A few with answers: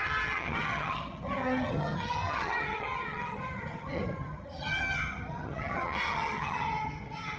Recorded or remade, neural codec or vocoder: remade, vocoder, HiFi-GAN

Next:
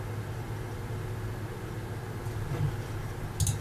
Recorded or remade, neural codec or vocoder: recorded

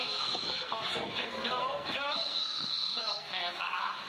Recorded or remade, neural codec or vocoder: remade, codec, SNAC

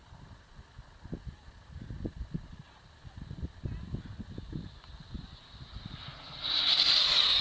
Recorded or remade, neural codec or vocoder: recorded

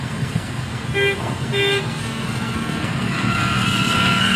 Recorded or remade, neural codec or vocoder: remade, codec, SNAC